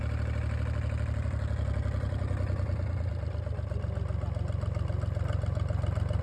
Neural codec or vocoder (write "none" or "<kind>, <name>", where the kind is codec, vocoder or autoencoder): none